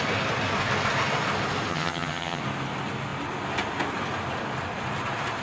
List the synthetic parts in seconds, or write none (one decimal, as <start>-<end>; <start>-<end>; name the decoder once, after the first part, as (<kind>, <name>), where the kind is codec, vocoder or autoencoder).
1.7-2.4 (vocoder, HiFi-GAN)